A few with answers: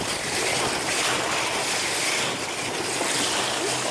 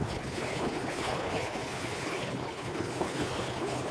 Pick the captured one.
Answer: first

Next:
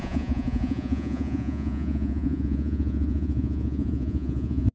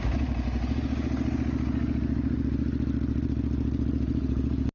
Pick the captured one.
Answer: second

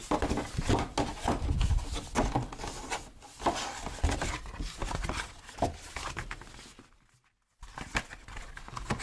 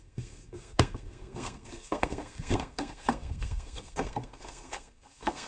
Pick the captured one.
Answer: first